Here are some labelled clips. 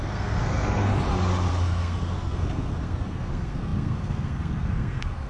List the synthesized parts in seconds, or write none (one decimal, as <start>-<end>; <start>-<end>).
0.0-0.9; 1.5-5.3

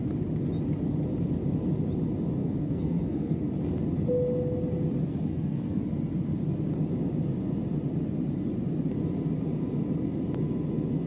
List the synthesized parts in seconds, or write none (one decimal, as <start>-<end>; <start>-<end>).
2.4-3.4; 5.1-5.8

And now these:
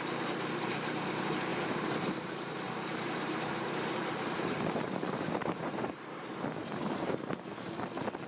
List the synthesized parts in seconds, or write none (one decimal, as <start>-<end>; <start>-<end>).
1.5-6.0; 6.6-7.5

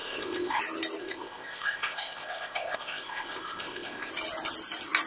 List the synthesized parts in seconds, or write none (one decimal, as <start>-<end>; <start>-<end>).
0.0-0.6; 1.0-4.1

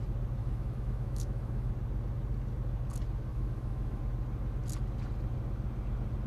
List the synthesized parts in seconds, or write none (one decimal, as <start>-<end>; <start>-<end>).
0.4-1.7; 3.3-4.0